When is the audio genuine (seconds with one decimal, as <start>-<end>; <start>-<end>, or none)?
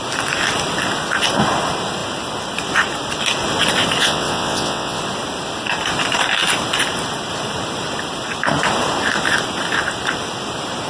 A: 0.0-4.0; 5.0-10.9